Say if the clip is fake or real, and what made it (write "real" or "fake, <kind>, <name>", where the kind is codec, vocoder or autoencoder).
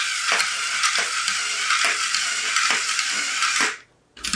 real